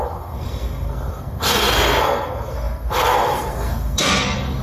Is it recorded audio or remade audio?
remade